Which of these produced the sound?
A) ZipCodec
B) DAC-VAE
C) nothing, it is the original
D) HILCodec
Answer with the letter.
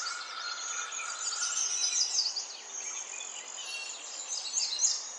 C